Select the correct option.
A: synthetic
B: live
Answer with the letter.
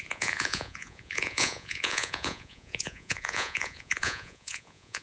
A